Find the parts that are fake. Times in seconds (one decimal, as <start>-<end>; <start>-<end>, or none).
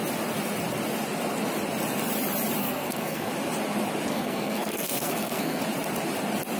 2.6-3.3; 4.1-5.6